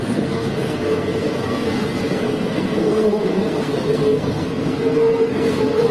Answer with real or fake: fake